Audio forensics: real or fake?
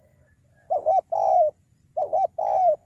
real